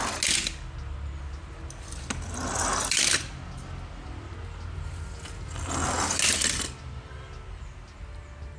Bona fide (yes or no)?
yes